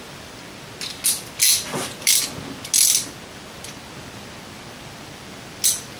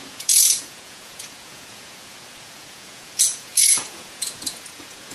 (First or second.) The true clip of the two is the first